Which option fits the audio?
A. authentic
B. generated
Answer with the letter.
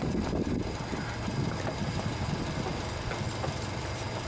A